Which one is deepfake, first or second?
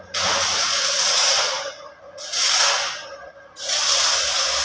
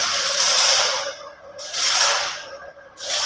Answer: second